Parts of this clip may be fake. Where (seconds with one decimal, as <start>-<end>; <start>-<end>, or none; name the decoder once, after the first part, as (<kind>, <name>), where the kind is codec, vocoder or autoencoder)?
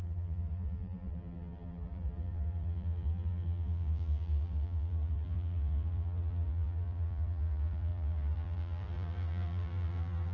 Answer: 0.0-10.3 (vocoder, BigVGAN v2)